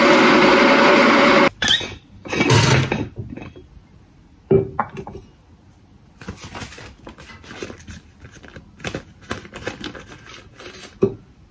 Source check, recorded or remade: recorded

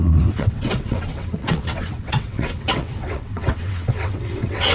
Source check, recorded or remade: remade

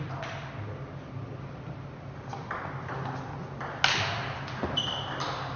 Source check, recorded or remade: recorded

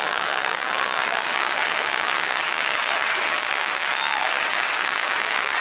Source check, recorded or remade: remade